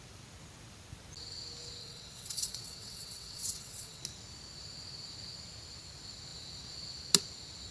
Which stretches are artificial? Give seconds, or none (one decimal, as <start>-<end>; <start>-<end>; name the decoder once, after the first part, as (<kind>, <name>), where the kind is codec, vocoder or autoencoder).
1.8-4.0 (vocoder, WaveNeXt)

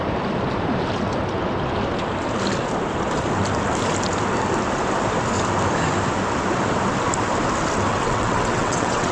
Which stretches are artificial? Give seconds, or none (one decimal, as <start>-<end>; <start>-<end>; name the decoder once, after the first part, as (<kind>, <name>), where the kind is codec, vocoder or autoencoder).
7.9-9.1 (vocoder, WaveNeXt)

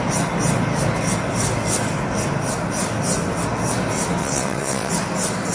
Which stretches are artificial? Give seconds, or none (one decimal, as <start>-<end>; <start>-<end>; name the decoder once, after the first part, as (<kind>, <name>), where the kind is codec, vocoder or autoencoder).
4.2-4.9 (vocoder, WaveNeXt)

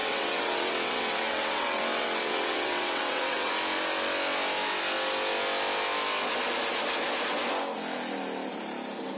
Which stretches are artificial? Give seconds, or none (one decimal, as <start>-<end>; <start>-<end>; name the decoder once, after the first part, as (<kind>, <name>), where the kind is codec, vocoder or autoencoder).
0.0-3.5 (vocoder, WaveNeXt)

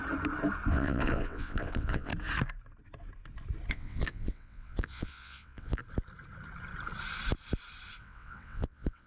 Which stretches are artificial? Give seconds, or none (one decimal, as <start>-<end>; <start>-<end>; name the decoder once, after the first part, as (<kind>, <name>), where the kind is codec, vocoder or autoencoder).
0.7-2.1 (vocoder, WaveNeXt); 3.7-5.8; 8.0-9.1